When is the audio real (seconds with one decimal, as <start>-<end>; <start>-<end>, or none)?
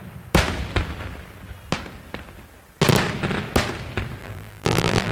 0.0-4.2